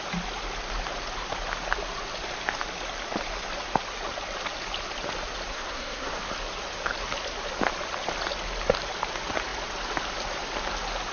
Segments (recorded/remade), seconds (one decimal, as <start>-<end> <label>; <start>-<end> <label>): 0.0-5.5 recorded; 5.5-6.2 remade; 6.2-11.1 recorded